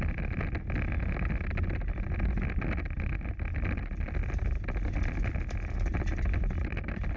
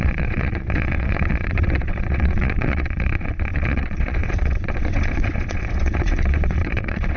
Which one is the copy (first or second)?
second